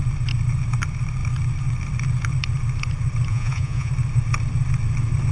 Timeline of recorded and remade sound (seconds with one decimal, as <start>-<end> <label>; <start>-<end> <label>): 0.0-3.3 recorded; 3.3-3.9 remade; 3.9-5.3 recorded